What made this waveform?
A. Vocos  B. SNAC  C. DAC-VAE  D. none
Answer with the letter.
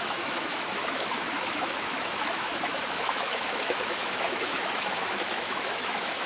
C